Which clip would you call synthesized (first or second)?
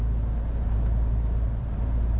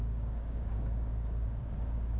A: second